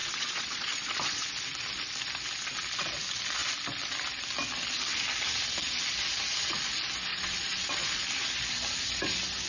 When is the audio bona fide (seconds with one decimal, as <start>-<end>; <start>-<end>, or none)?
1.3-7.1; 8.0-9.5